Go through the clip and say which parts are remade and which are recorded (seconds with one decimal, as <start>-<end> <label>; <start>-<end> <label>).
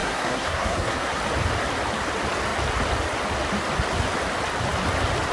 0.0-1.2 remade; 1.2-5.3 recorded